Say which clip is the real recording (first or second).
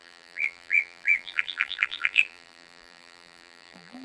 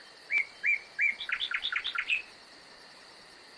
second